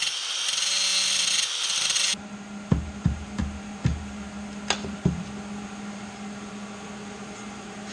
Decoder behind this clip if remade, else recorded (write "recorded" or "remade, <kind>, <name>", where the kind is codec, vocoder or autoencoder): recorded